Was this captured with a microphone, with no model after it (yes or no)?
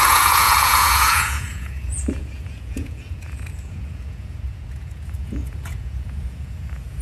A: no